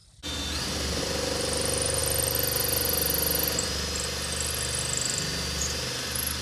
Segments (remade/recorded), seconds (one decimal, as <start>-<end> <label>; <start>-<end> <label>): 0.0-6.4 recorded